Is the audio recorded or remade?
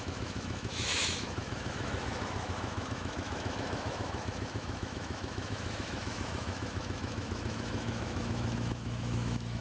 remade